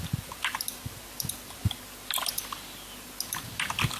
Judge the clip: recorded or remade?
recorded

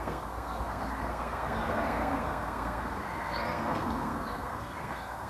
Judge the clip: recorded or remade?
remade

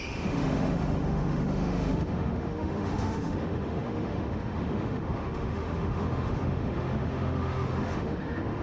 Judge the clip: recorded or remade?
remade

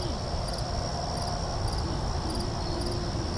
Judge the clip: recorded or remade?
recorded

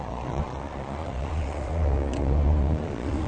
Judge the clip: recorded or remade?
remade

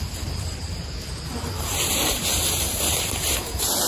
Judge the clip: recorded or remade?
remade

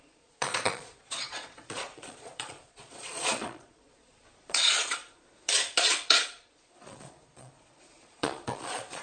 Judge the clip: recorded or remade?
remade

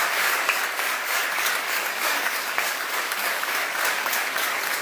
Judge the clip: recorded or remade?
remade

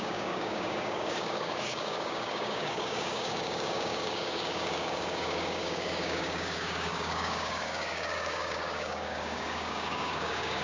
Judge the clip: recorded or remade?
remade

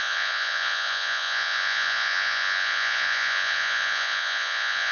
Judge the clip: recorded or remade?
remade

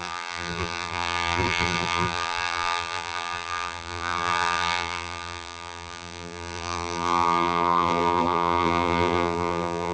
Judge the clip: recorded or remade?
remade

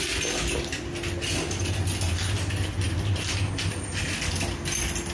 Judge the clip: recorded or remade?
recorded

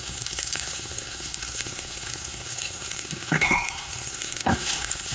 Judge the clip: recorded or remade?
remade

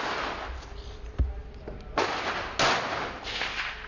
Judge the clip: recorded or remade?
recorded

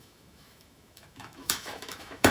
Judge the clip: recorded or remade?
remade